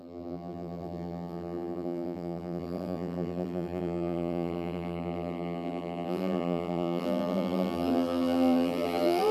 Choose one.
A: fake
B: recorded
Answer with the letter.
A